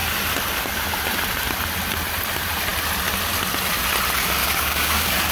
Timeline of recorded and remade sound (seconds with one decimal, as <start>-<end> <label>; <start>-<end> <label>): 0.0-4.4 recorded; 4.4-5.3 remade